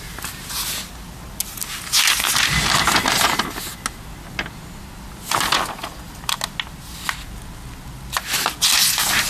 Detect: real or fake real